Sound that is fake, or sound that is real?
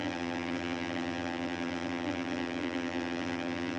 fake